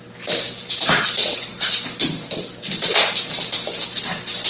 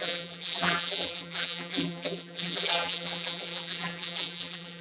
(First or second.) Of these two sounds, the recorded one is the first